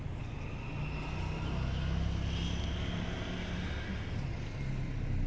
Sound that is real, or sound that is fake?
real